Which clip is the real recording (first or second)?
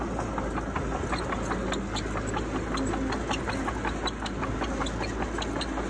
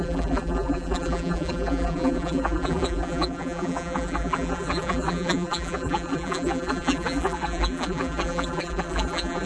first